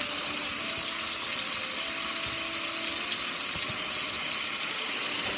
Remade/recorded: recorded